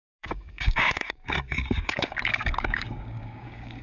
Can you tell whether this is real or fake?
fake